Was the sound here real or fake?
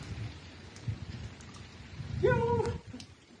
fake